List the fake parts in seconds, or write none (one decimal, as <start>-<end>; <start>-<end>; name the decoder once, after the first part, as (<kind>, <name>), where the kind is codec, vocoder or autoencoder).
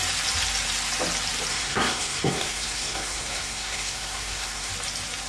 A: 1.5-4.7 (codec, SNAC)